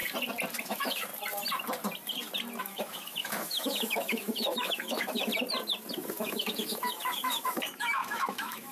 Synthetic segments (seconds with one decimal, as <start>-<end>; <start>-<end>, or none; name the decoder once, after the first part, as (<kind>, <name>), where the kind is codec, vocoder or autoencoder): 0.6-1.1 (autoencoder, DAC-VAE); 2.6-5.3; 6.1-8.7